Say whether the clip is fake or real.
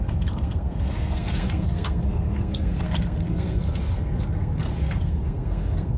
fake